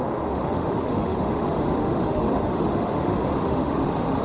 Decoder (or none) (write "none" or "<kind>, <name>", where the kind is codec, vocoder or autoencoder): autoencoder, DAC-VAE